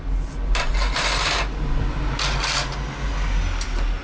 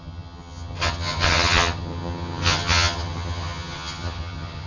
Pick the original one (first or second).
first